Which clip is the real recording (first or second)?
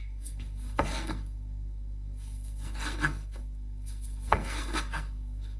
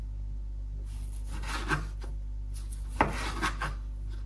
second